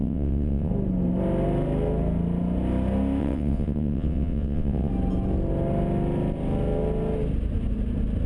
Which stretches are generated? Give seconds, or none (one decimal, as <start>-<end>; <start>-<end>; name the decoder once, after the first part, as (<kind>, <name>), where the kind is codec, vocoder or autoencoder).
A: 0.0-0.7 (vocoder, WaveNeXt); 3.2-4.9